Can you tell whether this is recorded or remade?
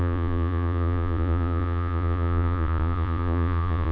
remade